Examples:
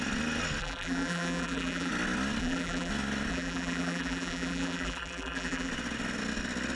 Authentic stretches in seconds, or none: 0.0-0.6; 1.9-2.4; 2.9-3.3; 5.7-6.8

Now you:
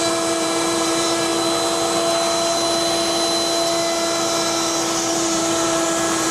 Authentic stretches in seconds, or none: 1.3-5.1

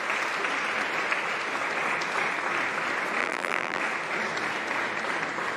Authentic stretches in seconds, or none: 0.0-3.2; 3.8-5.6

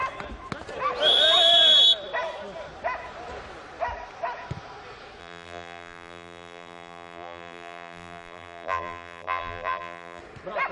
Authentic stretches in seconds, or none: 0.0-5.2; 10.2-10.7

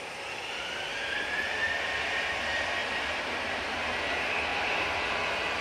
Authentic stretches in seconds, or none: 0.0-0.9; 1.6-2.8; 3.8-5.6

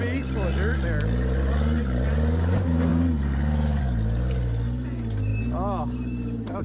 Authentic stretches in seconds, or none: 0.0-6.6

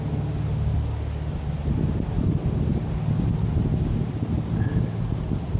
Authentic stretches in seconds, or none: 0.0-5.6

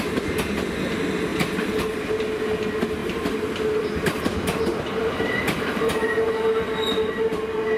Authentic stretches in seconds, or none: 0.0-1.3; 1.8-3.0; 6.3-7.8